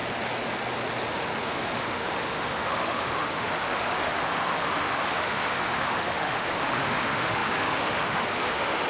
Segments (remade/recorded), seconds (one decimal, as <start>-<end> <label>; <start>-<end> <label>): 0.0-1.1 recorded; 1.1-8.9 remade

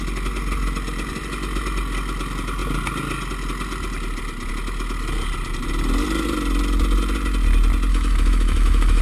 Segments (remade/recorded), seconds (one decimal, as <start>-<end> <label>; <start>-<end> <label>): 0.0-7.9 recorded; 7.9-9.0 remade